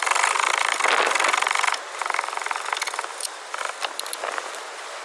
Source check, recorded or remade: recorded